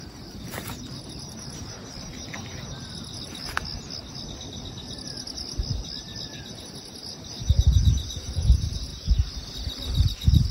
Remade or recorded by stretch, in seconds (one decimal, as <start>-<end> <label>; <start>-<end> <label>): 0.0-10.5 recorded